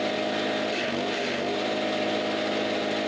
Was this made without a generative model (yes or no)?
yes